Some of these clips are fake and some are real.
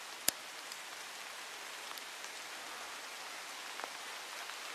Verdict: real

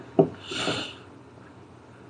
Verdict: real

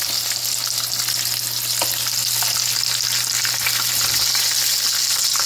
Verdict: real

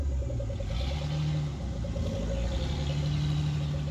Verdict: real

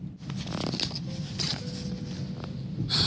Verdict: real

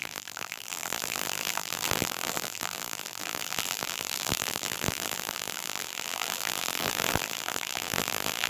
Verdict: fake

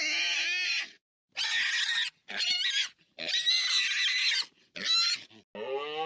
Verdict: real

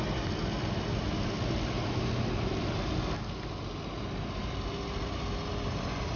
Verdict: real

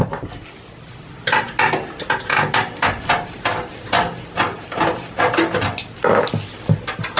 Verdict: real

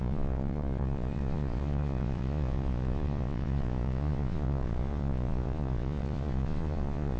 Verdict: fake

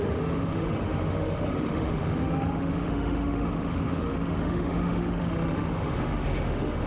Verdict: fake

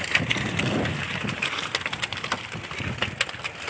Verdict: real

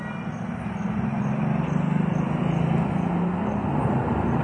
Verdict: real